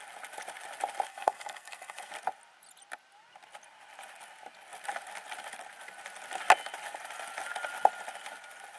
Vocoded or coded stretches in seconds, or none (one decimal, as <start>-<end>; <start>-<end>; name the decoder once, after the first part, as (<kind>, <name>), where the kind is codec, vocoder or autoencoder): 1.1-2.1 (codec, SNAC)